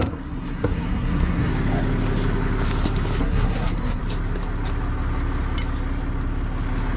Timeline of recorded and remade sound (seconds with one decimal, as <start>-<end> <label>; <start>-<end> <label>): 0.0-1.5 remade; 1.5-3.2 recorded; 3.2-4.0 remade; 4.0-7.0 recorded